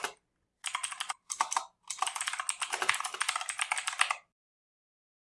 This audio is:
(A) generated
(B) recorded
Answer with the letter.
B